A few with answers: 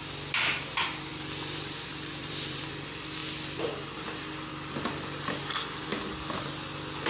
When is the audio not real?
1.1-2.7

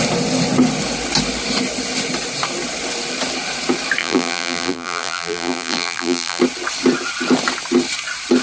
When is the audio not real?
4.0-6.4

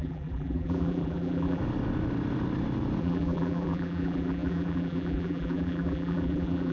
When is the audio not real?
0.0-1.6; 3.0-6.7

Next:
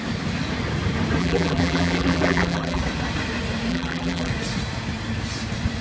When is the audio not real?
1.2-2.8; 3.7-4.3

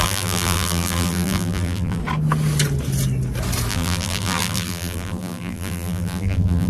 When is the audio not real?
0.0-2.0; 3.7-6.7

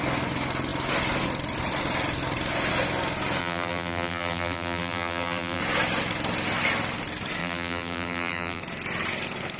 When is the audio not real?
3.4-5.6; 7.4-8.6